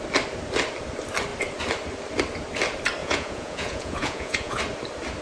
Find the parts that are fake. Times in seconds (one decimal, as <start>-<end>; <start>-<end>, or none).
3.0-4.6